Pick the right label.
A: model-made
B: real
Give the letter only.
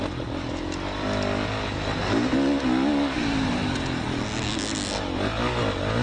B